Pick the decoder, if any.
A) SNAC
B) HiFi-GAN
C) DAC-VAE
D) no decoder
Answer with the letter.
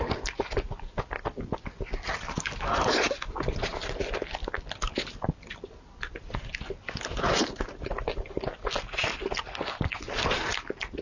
D